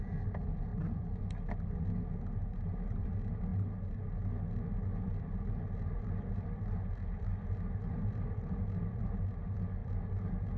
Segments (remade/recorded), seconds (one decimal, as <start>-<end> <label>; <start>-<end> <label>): 0.0-0.7 recorded; 0.7-1.2 remade; 1.2-2.4 recorded; 2.4-3.1 remade; 3.1-9.8 recorded; 9.8-10.6 remade